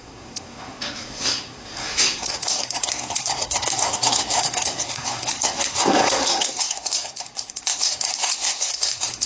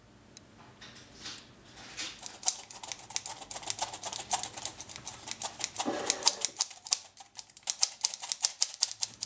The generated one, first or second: first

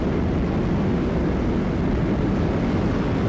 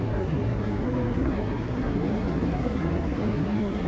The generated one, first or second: second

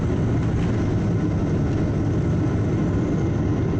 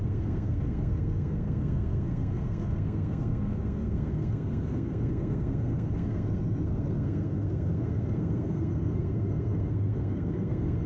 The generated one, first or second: second